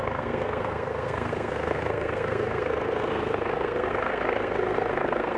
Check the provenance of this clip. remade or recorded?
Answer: remade